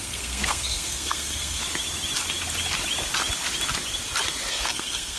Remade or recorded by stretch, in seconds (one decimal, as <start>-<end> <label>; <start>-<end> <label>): 0.0-1.6 remade; 1.6-4.5 recorded; 4.5-5.2 remade